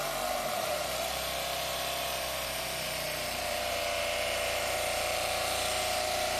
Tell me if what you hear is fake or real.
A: fake